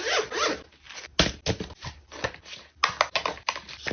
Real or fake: real